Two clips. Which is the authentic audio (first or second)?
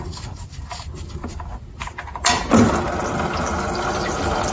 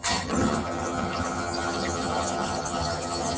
first